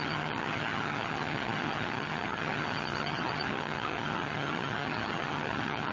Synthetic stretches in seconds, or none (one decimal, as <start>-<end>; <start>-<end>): 0.0-5.9